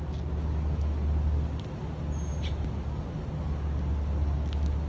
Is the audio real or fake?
real